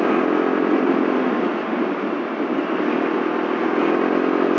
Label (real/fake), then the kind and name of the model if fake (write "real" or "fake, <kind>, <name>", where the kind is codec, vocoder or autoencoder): real